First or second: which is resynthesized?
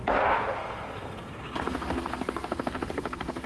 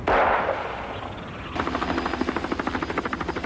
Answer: first